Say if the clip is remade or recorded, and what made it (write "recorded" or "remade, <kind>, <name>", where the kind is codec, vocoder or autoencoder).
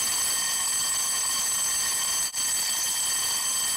recorded